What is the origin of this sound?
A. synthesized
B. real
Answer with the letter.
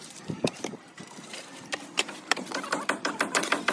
A